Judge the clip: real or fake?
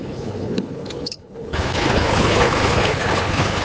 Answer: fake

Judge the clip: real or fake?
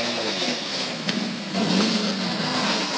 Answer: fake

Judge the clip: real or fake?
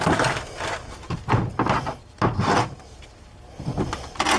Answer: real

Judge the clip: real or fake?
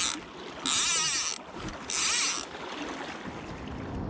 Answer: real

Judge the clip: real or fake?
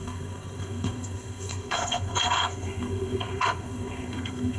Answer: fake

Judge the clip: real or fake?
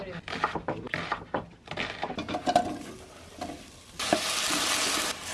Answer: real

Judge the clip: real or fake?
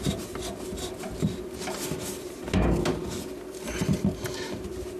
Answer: real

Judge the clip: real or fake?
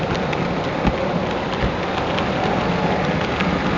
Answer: real